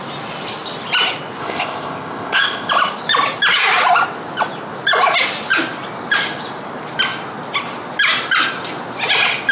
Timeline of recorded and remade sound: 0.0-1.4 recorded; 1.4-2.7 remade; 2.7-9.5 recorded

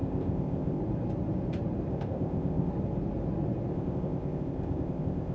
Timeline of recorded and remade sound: 0.0-0.8 remade; 0.8-1.9 recorded; 1.9-2.7 remade; 2.7-3.7 recorded; 3.7-5.3 remade

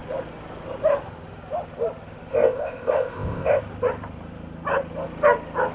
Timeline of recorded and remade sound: 0.0-2.3 recorded; 2.3-3.6 remade; 3.6-5.7 recorded

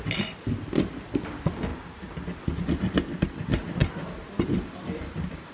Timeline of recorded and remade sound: 0.0-5.5 recorded

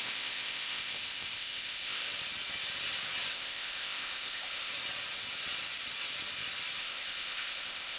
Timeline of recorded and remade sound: 0.0-2.1 remade; 2.1-3.3 recorded; 3.3-4.7 remade; 4.7-6.8 recorded; 6.8-8.0 remade

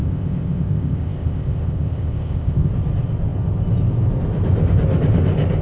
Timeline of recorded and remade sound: 0.0-2.7 remade; 2.7-5.6 recorded